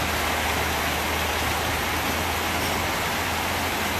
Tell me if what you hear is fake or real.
real